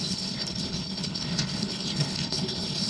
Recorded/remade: remade